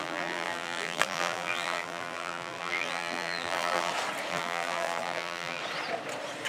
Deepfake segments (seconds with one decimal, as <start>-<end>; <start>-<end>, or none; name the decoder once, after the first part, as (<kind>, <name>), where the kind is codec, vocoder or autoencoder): 0.0-3.9 (vocoder, BigVGAN v2); 4.3-5.6